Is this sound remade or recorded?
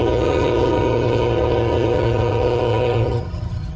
remade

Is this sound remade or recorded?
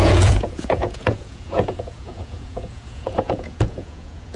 remade